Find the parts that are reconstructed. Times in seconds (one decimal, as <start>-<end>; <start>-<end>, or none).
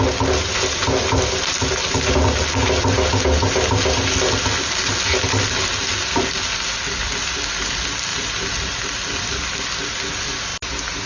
none